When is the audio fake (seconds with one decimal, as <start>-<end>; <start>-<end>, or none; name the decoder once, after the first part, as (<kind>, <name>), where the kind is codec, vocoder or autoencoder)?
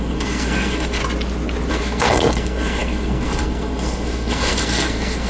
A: 0.0-1.0 (codec, SNAC); 1.7-5.3